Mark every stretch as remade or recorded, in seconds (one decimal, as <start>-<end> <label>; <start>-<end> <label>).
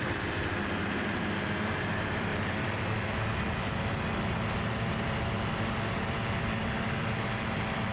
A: 0.0-7.9 remade